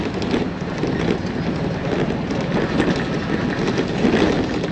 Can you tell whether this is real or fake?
real